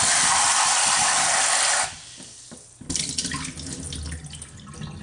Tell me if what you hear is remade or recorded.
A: recorded